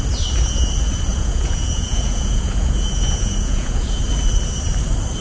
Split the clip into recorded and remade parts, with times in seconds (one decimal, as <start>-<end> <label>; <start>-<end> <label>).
0.0-1.1 recorded; 1.1-4.0 remade; 4.0-5.2 recorded